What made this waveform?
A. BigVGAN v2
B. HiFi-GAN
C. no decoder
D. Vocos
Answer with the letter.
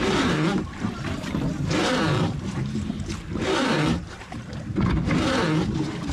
A